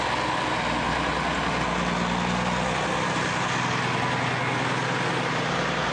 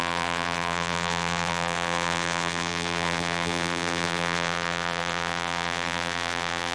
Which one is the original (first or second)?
first